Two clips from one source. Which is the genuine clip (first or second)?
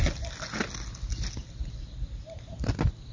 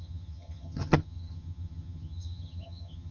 first